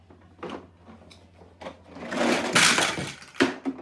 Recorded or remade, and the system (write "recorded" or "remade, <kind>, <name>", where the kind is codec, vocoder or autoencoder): recorded